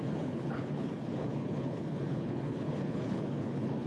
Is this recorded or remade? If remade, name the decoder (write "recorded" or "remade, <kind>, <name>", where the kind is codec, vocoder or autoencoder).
remade, codec, HILCodec